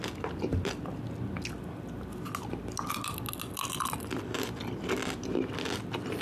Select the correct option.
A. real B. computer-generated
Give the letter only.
A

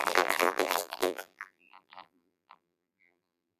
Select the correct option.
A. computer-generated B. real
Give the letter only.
A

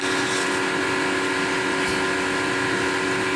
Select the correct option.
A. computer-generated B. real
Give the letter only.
B